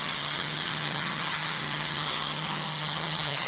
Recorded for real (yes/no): no